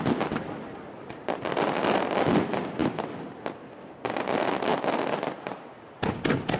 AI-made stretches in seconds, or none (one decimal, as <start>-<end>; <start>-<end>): none